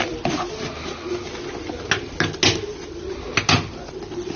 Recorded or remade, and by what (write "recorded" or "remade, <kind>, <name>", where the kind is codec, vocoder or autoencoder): recorded